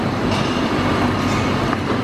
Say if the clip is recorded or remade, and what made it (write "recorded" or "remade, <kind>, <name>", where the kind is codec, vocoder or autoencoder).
recorded